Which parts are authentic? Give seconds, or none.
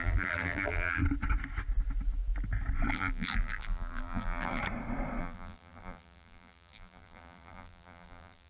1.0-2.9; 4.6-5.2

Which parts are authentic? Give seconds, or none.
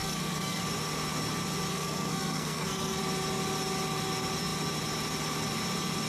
0.6-1.7; 3.0-6.1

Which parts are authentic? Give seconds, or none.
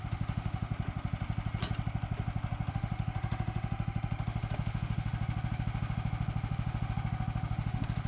0.7-2.7